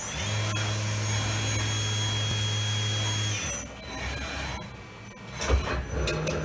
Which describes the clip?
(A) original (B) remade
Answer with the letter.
A